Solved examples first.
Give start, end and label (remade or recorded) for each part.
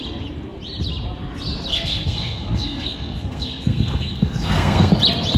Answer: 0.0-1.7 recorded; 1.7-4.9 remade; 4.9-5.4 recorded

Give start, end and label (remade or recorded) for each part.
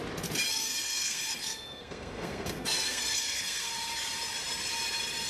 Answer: 0.0-0.5 recorded; 0.5-3.7 remade; 3.7-5.3 recorded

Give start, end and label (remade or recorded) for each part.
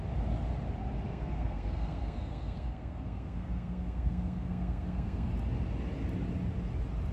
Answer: 0.0-1.1 recorded; 1.1-5.3 remade; 5.3-7.1 recorded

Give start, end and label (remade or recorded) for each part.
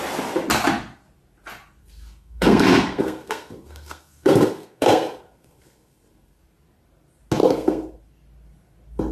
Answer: 0.0-1.8 recorded; 1.8-6.4 remade; 6.4-7.4 recorded; 7.4-8.0 remade; 8.0-9.1 recorded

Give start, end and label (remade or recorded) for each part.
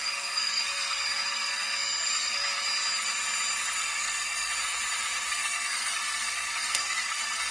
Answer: 0.0-2.4 remade; 2.4-3.8 recorded; 3.8-4.5 remade; 4.5-5.3 recorded; 5.3-7.5 remade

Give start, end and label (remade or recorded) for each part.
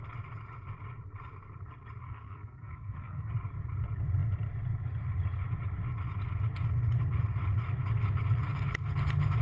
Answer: 0.0-2.0 recorded; 2.0-3.3 remade; 3.3-9.4 recorded